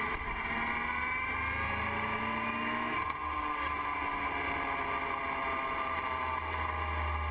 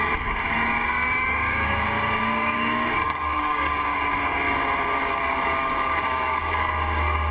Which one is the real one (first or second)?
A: first